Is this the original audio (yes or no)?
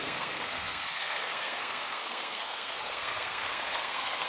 no